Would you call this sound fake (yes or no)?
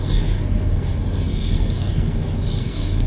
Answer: yes